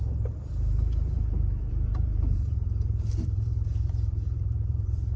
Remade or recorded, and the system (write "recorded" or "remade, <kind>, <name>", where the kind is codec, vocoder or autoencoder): remade, vocoder, BigVGAN v2